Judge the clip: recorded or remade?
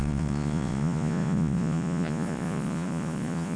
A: remade